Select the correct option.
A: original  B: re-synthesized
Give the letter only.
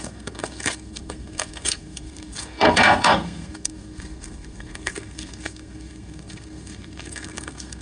B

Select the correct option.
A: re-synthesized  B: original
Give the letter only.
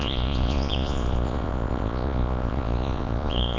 A